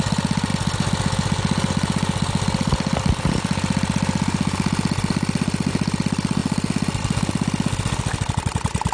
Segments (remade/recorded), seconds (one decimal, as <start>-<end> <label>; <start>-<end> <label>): 0.0-8.9 recorded